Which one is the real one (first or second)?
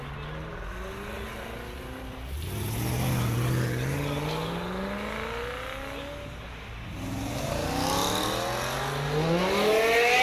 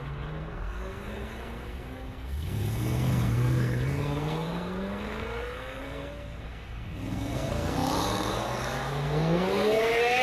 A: first